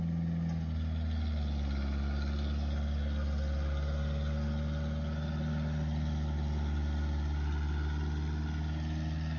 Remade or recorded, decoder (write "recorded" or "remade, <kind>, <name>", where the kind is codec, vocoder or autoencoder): recorded